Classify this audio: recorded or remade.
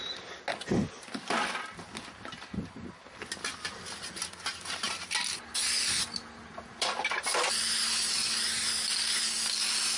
recorded